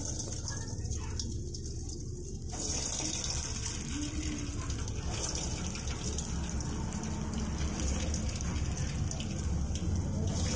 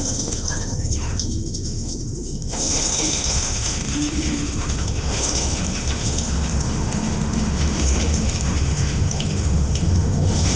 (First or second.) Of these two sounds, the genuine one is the first